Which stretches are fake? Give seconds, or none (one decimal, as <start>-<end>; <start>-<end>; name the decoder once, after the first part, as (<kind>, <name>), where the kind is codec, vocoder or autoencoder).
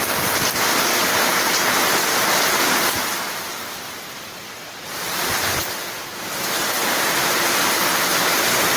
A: 1.3-5.6 (vocoder, BigVGAN v2); 6.8-7.6